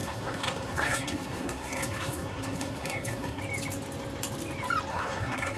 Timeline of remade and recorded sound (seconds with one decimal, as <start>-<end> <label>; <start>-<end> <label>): 0.0-3.4 remade; 3.4-4.9 recorded; 4.9-5.6 remade